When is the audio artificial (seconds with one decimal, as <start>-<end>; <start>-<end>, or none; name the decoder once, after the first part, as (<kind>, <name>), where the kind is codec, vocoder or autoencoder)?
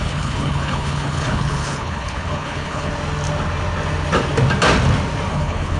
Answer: 0.0-2.9 (codec, HILCodec); 5.3-5.8